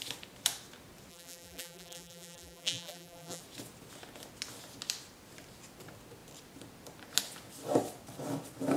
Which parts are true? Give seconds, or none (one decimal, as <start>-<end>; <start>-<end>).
0.0-1.1; 3.4-8.8